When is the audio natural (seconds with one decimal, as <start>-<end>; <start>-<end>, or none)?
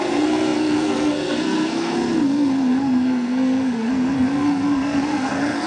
none